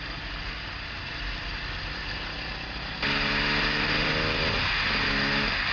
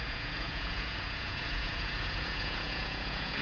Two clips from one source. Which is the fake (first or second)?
second